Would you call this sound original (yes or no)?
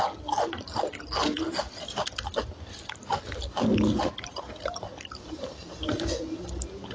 yes